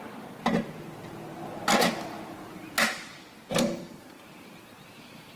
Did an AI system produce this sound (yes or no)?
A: no